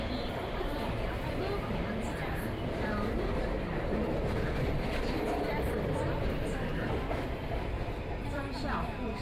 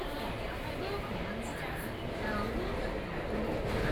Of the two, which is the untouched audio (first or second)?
second